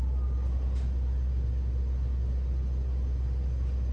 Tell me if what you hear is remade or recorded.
recorded